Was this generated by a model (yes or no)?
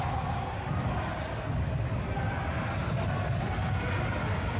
no